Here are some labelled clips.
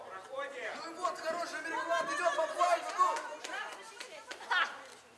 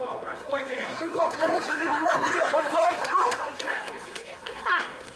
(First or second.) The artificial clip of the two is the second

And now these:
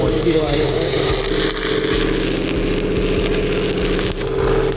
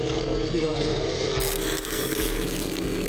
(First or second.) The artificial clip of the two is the second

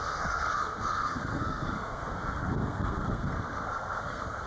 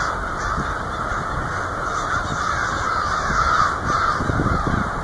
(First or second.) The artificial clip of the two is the first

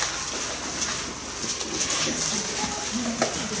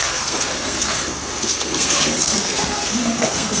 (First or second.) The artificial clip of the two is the second